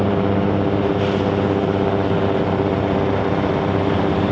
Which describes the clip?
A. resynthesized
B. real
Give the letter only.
B